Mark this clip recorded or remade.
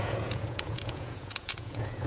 remade